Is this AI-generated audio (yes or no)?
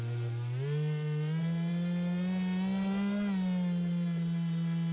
no